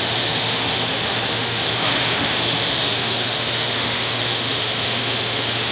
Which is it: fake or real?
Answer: fake